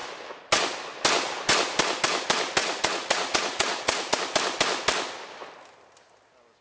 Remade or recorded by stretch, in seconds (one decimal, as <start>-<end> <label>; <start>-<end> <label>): 0.0-2.6 recorded; 2.6-4.2 remade; 4.2-6.6 recorded